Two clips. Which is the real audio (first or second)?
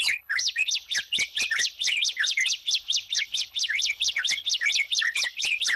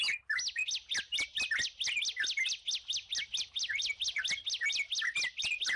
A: second